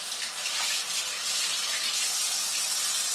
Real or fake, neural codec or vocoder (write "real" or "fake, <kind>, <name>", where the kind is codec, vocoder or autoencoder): real